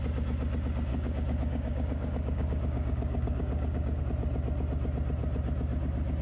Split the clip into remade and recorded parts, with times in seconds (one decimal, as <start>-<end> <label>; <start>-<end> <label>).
0.0-0.9 recorded; 0.9-4.0 remade; 4.0-6.2 recorded